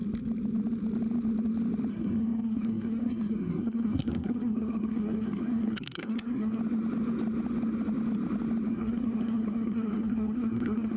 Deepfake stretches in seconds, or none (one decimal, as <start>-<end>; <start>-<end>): 1.9-6.6; 8.7-11.0